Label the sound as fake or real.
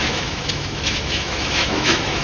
fake